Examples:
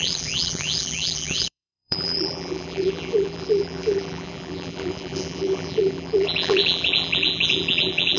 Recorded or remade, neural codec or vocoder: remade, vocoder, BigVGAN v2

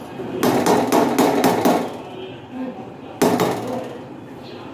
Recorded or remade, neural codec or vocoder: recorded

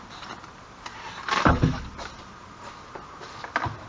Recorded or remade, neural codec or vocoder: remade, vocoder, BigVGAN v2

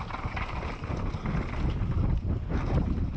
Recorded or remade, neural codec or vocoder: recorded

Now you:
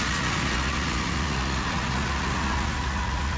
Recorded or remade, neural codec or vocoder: remade, vocoder, Vocos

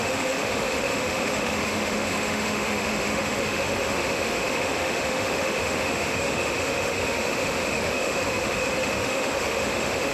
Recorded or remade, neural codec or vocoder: remade, autoencoder, DAC-VAE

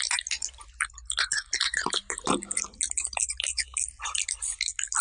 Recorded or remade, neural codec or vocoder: recorded